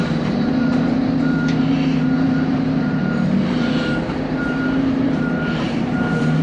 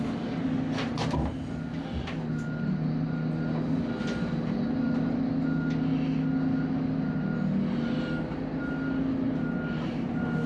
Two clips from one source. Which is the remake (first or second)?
first